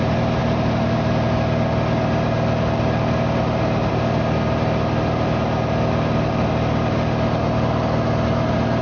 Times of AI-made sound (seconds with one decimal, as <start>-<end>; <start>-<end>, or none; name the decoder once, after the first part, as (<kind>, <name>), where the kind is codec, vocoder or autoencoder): none